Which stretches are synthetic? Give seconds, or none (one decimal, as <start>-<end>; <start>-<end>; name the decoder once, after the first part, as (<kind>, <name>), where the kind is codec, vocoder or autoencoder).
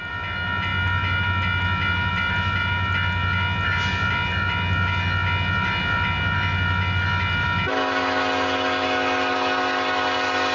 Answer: none